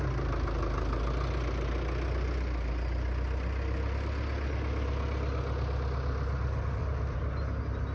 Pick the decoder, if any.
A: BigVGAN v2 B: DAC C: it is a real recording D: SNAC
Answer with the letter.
C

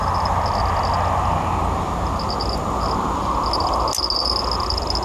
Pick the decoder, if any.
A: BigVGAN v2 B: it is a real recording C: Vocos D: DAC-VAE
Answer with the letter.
B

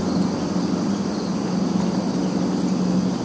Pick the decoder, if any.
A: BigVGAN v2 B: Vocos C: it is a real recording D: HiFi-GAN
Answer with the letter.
C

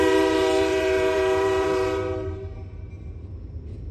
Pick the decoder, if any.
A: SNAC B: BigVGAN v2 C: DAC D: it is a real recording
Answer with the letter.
B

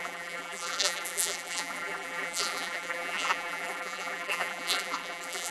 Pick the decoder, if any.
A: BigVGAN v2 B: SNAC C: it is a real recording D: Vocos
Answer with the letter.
A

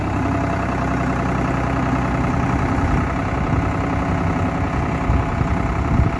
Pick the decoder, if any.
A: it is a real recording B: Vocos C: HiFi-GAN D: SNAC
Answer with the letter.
A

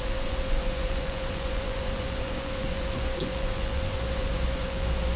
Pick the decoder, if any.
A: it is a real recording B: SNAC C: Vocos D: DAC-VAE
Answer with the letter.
C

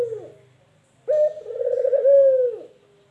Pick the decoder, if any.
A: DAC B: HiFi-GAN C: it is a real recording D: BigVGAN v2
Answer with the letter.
C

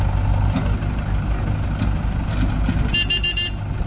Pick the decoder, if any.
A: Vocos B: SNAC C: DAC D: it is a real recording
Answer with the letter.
D